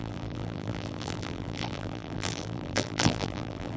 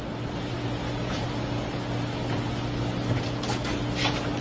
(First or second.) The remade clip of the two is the first